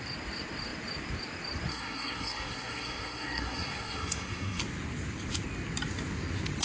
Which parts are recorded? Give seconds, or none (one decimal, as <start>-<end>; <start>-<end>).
0.0-1.7; 4.6-6.6